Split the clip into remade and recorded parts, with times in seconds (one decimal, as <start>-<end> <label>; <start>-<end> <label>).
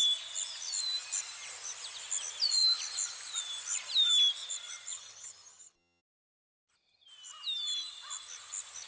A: 0.0-4.9 recorded; 4.9-6.0 remade; 6.0-8.9 recorded